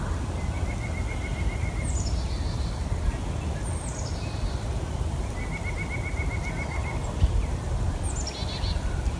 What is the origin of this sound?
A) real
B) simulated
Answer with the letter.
A